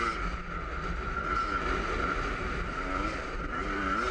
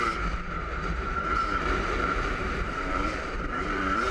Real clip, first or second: first